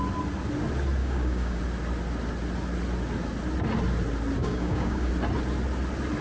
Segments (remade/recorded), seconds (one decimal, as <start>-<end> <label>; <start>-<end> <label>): 0.0-1.0 recorded; 1.0-1.6 remade; 1.6-4.4 recorded; 4.4-5.1 remade; 5.1-6.2 recorded